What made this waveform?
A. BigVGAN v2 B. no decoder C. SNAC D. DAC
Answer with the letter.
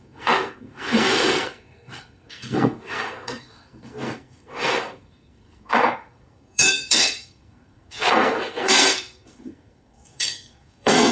C